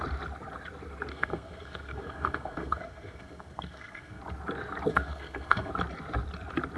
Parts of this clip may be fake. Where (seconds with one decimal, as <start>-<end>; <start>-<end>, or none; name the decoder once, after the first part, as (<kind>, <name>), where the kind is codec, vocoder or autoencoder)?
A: 1.1-4.2 (codec, SNAC); 4.9-5.7